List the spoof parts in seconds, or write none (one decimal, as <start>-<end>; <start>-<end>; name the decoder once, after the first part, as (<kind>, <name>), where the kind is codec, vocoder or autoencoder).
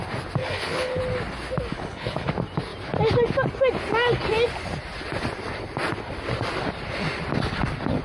0.4-1.0 (codec, HILCodec); 1.7-2.3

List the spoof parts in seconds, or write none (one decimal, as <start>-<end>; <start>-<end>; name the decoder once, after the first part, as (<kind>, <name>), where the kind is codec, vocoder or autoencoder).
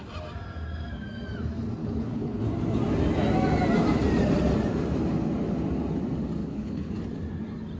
1.8-2.4 (codec, HILCodec); 6.4-6.9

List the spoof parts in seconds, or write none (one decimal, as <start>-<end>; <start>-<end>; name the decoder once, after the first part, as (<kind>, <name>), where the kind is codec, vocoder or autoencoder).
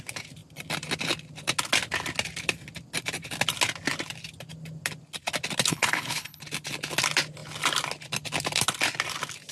5.7-6.4 (codec, HILCodec)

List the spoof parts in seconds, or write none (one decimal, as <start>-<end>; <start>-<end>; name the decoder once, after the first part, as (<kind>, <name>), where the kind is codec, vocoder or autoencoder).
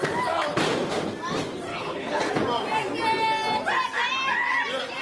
1.7-2.3 (codec, HILCodec)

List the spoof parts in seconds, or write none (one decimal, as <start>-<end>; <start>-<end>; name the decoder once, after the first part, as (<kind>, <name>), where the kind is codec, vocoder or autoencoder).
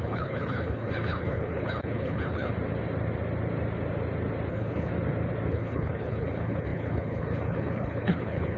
0.0-2.5 (codec, HILCodec); 4.5-4.9; 5.5-8.6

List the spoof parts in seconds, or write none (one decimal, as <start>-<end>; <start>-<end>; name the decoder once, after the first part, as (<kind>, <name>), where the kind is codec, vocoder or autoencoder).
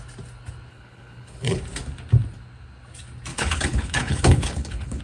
0.7-1.6 (codec, HILCodec); 3.3-5.0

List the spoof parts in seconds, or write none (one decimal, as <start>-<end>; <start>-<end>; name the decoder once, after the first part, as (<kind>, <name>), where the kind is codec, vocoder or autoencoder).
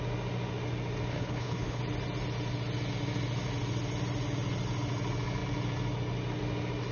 1.1-1.8 (codec, HILCodec)